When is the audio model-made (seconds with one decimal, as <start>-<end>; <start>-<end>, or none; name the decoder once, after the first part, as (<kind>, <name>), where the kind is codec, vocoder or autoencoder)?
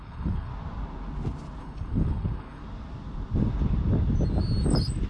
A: 0.0-0.5 (codec, HILCodec); 1.6-2.6